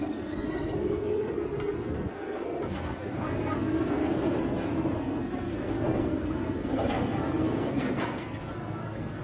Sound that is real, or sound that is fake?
fake